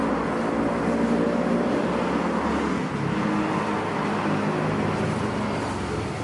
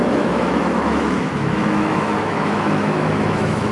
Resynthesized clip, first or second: second